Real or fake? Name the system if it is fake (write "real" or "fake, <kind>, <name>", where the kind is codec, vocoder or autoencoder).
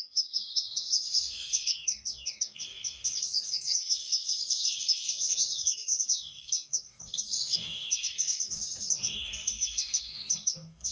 fake, codec, DAC